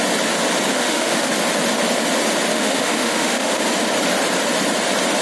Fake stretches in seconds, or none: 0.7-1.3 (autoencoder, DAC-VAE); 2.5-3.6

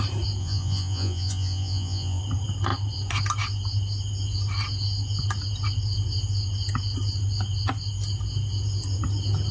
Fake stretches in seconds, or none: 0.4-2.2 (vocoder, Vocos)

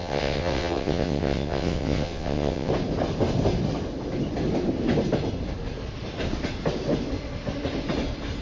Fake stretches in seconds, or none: 0.0-2.7 (vocoder, WaveNeXt)

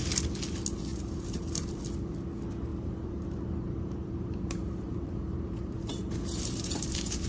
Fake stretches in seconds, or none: 0.9-1.8 (vocoder, BigVGAN v2); 2.7-7.3

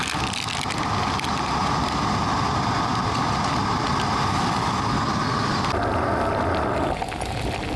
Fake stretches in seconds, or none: none

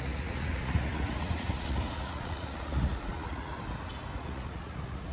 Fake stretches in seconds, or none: 0.0-3.5 (vocoder, Vocos); 4.2-5.1

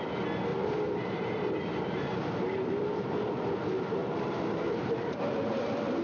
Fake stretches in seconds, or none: 0.5-3.5 (vocoder, BigVGAN v2); 4.0-6.0

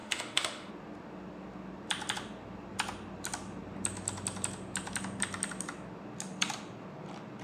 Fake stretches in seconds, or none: 0.0-0.7 (autoencoder, DAC-VAE)